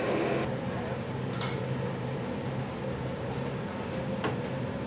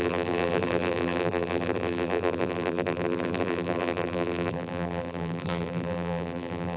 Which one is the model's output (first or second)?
second